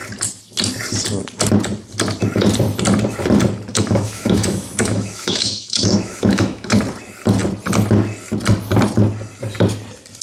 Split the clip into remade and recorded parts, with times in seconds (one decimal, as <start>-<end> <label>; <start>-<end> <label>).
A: 0.0-3.7 recorded; 3.7-6.8 remade; 6.8-10.2 recorded